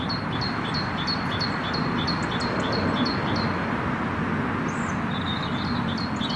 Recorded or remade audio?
recorded